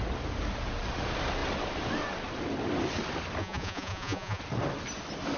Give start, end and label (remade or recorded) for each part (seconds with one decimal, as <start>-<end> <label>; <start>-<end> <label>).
0.0-3.4 recorded; 3.4-4.4 remade; 4.4-5.4 recorded